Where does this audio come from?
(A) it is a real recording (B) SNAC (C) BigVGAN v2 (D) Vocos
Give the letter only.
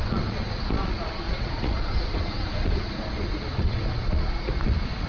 D